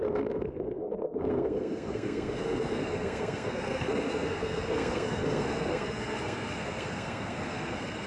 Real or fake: fake